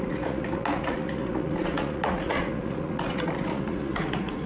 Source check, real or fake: fake